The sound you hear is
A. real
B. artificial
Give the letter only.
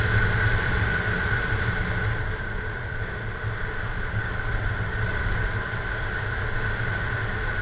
A